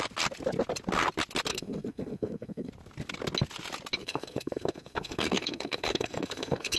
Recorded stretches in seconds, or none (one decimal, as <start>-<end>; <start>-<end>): 0.0-1.5; 2.7-4.0